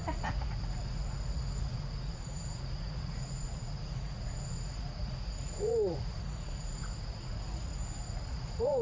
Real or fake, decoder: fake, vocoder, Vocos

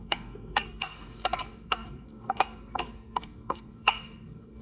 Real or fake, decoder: fake, codec, SNAC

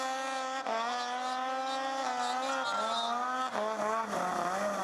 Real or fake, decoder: real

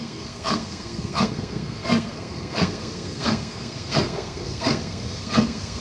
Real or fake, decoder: fake, codec, SNAC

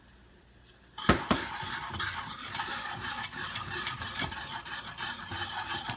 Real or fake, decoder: fake, vocoder, BigVGAN v2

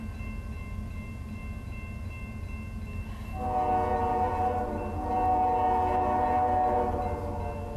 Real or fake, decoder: real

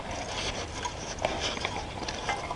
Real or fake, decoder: real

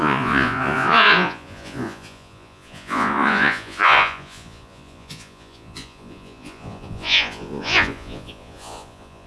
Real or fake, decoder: fake, vocoder, Vocos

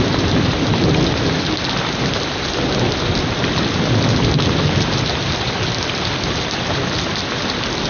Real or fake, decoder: real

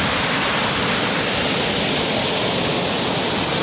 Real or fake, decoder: real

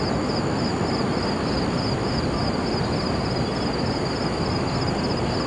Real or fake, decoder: real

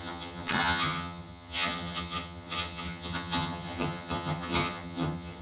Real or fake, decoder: fake, vocoder, HiFi-GAN